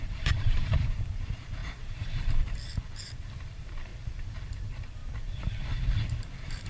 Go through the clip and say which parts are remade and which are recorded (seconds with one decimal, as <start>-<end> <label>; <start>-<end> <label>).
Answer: 0.0-3.9 remade; 3.9-4.5 recorded; 4.5-5.0 remade; 5.0-6.0 recorded; 6.0-6.7 remade